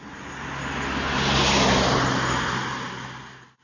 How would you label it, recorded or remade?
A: recorded